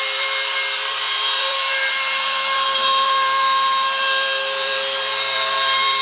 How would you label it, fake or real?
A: fake